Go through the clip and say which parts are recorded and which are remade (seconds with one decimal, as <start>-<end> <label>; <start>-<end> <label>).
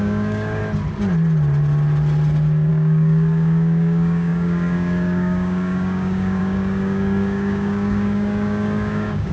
0.0-0.6 remade; 0.6-2.7 recorded; 2.7-9.3 remade